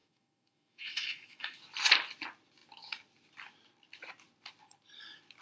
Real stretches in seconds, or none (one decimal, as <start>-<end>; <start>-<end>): 1.6-5.4